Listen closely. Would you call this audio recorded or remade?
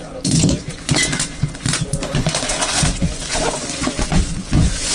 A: remade